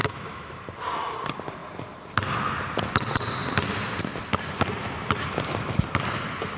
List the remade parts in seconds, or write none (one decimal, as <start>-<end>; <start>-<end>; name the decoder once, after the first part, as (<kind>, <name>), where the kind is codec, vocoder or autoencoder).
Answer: 0.0-0.6 (autoencoder, DAC-VAE)